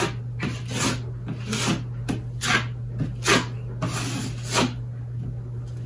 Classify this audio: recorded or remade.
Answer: recorded